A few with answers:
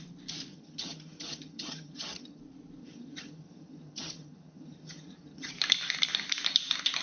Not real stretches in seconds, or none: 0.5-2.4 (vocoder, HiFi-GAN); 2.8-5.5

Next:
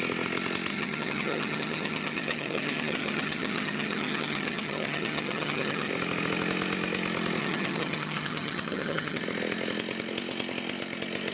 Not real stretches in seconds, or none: 0.7-5.9 (vocoder, HiFi-GAN); 7.4-9.2

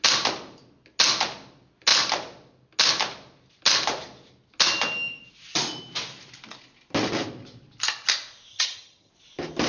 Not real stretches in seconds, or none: 8.5-9.1 (vocoder, HiFi-GAN)

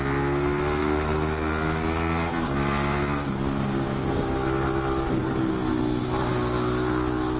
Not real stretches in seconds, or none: none

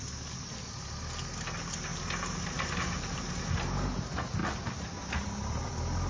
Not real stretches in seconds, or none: none